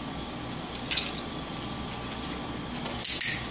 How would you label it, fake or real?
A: real